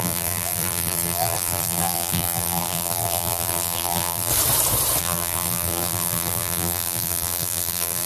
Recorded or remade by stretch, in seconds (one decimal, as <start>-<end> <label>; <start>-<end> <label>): 0.0-4.3 remade; 4.3-5.0 recorded; 5.0-8.1 remade